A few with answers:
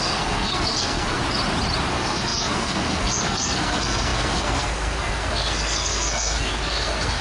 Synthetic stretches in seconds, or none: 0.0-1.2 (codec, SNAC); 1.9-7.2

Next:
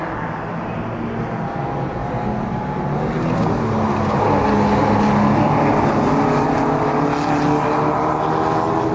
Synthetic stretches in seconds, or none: none

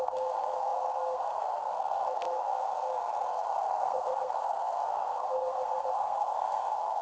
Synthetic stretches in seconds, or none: 0.0-7.0 (codec, SNAC)

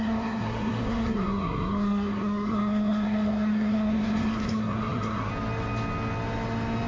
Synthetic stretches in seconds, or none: 0.0-5.3 (codec, SNAC)

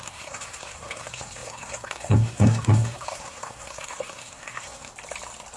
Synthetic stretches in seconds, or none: 0.0-4.9 (codec, SNAC)